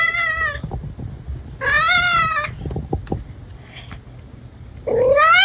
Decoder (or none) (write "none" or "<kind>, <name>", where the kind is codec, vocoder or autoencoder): none